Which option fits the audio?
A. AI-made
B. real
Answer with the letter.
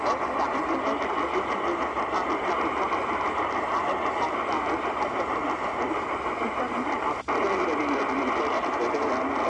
B